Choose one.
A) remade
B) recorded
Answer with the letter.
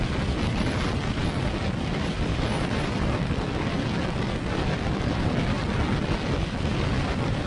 B